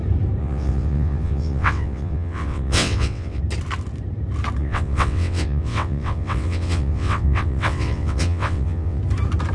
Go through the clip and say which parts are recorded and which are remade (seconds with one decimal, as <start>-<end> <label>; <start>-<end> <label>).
0.0-0.4 recorded; 0.4-3.4 remade; 3.4-4.6 recorded; 4.6-9.0 remade; 9.0-9.5 recorded